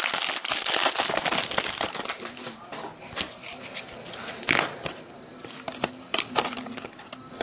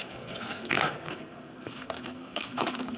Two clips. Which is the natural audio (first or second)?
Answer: first